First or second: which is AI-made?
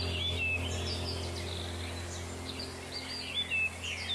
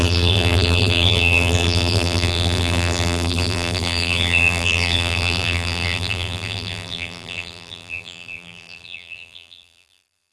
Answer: second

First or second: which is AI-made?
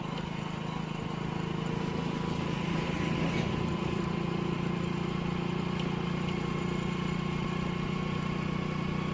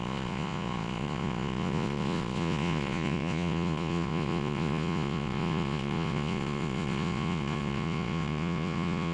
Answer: second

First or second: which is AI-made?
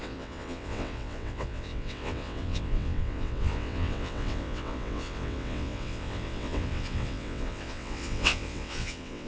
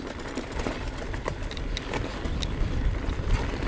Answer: first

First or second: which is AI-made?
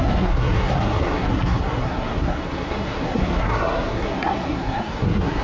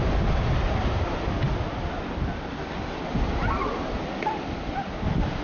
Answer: first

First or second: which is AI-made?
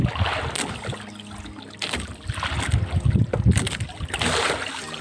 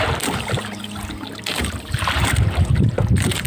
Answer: second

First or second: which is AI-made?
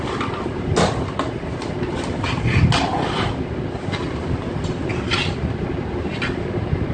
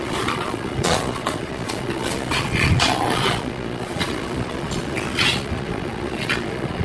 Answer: second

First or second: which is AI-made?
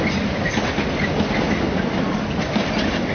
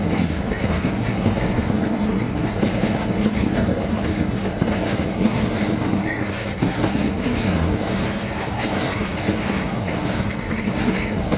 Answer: second